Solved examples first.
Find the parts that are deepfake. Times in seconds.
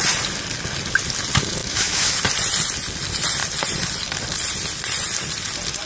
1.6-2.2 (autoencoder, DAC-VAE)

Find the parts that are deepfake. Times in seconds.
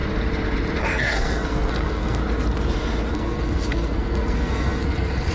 0.8-2.2 (codec, SNAC); 3.1-5.3